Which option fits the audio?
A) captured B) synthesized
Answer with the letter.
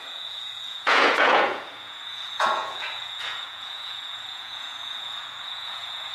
B